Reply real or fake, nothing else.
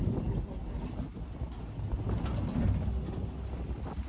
real